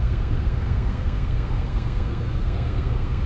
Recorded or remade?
remade